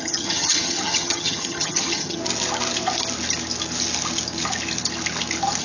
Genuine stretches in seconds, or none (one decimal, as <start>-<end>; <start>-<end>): 2.2-5.6